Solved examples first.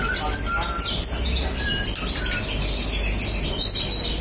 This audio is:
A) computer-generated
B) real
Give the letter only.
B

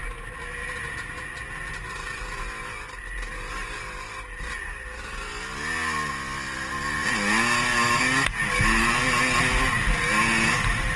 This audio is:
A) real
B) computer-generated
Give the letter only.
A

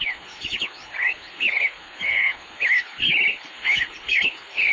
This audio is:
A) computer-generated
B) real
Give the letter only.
A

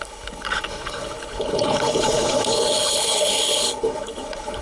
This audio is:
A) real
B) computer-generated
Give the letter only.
B